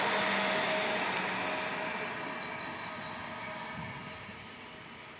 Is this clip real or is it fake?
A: real